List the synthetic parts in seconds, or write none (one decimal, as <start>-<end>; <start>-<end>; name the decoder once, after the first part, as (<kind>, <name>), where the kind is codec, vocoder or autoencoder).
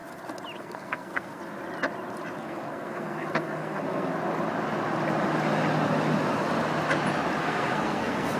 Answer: 0.6-1.4 (codec, SNAC); 2.4-4.1; 7.4-8.4